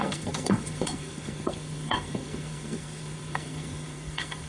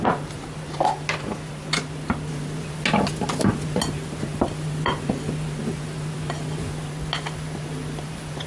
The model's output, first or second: first